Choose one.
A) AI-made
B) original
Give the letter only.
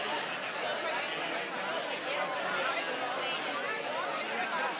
B